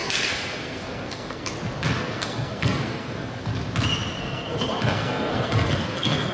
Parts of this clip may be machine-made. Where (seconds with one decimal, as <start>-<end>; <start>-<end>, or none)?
0.0-1.5; 2.0-3.5; 4.2-6.3